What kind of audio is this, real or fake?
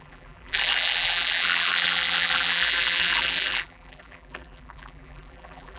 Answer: fake